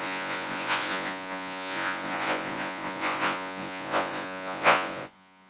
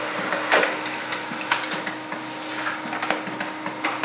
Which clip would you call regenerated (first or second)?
first